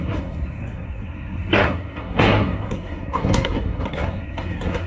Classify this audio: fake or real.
fake